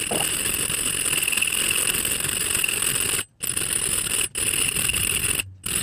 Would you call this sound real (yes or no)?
yes